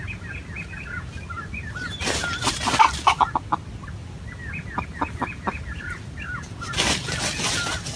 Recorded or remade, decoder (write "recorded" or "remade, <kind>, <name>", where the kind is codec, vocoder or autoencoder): recorded